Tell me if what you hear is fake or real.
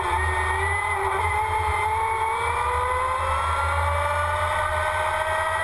real